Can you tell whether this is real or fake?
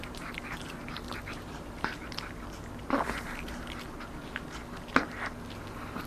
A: real